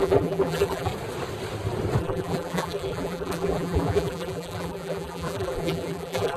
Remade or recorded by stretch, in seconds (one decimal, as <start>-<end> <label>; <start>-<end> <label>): 0.0-0.9 remade; 0.9-2.0 recorded; 2.0-6.4 remade